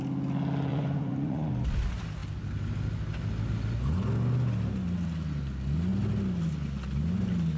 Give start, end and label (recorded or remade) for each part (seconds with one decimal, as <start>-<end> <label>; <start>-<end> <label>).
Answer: 0.0-0.7 recorded; 0.7-1.5 remade; 1.5-7.6 recorded